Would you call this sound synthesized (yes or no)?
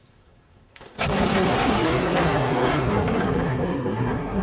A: yes